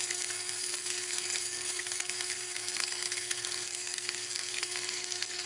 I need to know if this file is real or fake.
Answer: fake